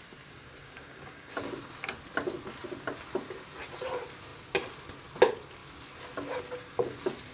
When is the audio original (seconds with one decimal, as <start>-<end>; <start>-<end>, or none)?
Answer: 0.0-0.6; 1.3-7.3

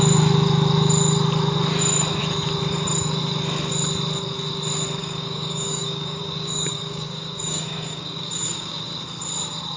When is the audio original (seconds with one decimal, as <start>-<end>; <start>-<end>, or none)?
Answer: 0.0-5.0; 8.8-9.8

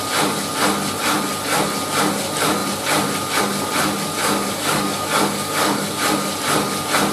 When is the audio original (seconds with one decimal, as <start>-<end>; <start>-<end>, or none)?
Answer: 0.0-4.2; 5.9-7.1

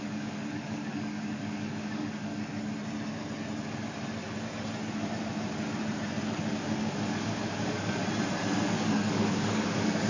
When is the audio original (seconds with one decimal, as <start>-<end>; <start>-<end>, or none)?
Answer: 2.3-6.6; 8.0-8.6